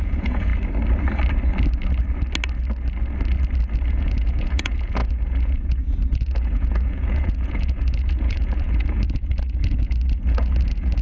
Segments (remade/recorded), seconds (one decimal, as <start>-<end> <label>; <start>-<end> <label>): 0.0-0.5 remade; 0.5-3.9 recorded; 3.9-11.0 remade